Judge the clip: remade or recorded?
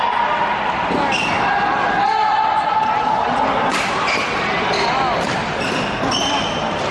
recorded